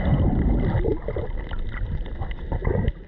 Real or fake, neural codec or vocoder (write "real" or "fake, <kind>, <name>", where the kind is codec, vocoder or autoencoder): real